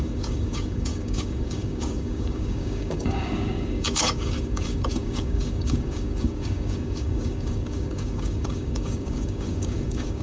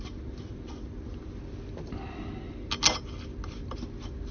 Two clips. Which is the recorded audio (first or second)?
second